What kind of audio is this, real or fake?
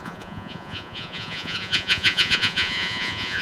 fake